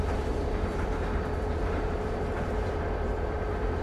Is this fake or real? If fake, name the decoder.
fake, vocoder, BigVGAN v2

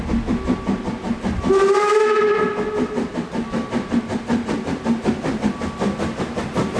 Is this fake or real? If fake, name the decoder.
real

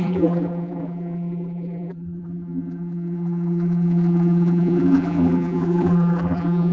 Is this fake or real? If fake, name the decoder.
fake, vocoder, BigVGAN v2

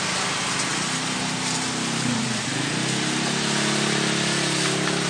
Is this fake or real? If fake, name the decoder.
real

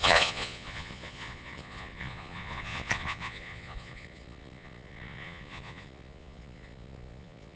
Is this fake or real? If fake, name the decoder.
fake, vocoder, Vocos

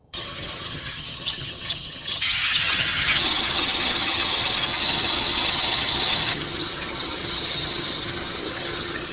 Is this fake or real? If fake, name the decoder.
fake, vocoder, HiFi-GAN